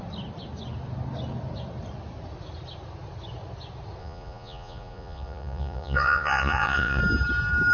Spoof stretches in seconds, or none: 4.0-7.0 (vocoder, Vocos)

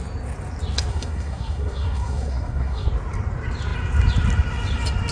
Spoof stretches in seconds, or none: 0.9-2.9 (codec, SNAC)

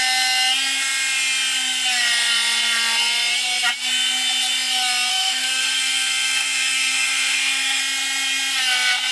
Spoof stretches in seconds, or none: 5.1-7.8 (codec, SNAC)